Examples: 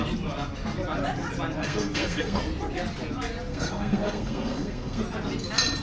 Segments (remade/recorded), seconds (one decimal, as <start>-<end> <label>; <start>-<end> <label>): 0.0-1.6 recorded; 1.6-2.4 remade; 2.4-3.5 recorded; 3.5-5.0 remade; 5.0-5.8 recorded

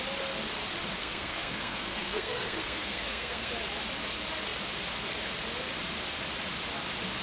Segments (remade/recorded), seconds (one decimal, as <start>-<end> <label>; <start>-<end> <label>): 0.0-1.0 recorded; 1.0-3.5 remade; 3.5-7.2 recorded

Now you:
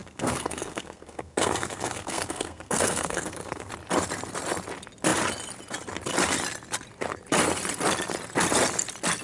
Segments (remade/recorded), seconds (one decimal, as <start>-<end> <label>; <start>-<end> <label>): 0.0-3.7 remade; 3.7-9.2 recorded

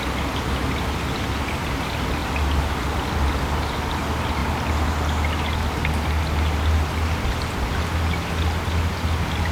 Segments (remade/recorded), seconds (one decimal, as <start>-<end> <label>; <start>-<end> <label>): 0.0-9.5 recorded

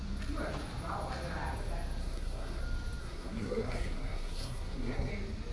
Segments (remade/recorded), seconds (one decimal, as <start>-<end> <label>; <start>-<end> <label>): 0.0-2.0 recorded; 2.0-2.6 remade; 2.6-3.0 recorded; 3.0-5.1 remade; 5.1-5.5 recorded

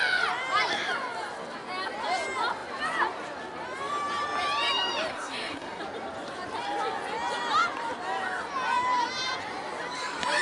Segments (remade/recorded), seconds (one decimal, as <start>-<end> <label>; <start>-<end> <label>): 0.0-5.1 recorded; 5.1-5.8 remade; 5.8-10.4 recorded

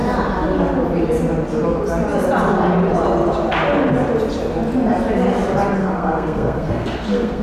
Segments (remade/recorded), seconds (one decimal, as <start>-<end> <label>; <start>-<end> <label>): 0.0-5.8 recorded; 5.8-7.4 remade

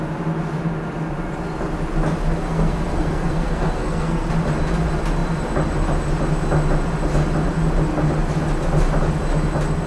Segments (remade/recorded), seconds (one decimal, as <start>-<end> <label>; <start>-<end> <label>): 0.0-2.4 recorded; 2.4-4.3 remade; 4.3-9.9 recorded